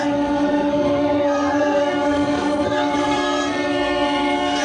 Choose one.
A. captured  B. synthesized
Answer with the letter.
B